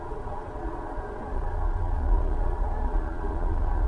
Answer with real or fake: fake